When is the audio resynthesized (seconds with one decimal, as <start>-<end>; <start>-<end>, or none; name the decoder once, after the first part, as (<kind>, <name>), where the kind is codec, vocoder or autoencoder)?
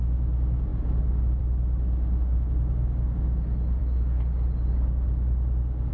none